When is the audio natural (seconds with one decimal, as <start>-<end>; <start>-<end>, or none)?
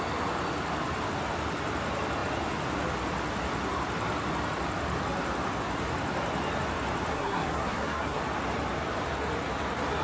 0.0-7.1; 8.2-10.0